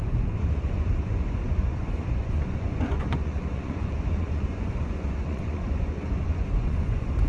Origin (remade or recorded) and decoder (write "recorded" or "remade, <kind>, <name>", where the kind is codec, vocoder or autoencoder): remade, vocoder, Vocos